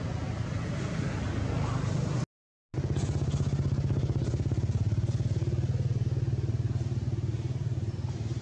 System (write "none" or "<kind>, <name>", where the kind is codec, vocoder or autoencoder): none